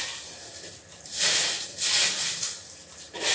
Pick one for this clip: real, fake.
real